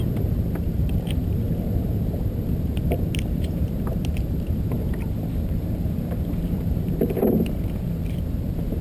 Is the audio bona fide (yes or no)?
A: no